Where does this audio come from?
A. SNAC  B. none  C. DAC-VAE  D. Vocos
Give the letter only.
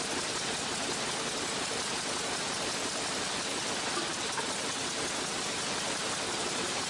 B